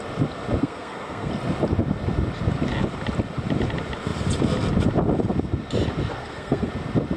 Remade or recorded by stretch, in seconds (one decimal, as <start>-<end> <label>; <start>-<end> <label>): 0.0-0.6 recorded; 0.6-1.3 remade; 1.3-6.2 recorded; 6.2-6.7 remade; 6.7-7.2 recorded

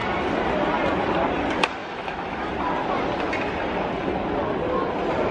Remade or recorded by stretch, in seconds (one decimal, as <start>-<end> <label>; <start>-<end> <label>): 0.0-1.8 recorded; 1.8-2.5 remade; 2.5-5.3 recorded

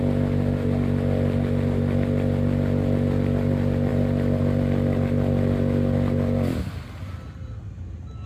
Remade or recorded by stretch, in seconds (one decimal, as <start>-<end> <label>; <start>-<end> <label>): 0.0-8.3 recorded

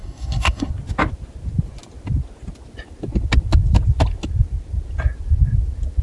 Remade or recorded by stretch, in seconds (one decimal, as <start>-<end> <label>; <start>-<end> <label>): 0.0-0.7 remade; 0.7-6.0 recorded

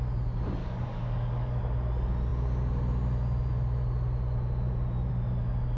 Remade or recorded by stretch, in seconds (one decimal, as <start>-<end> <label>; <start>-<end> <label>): 0.0-0.6 recorded; 0.6-1.6 remade; 1.6-5.8 recorded